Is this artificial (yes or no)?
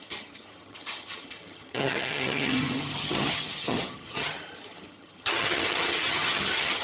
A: yes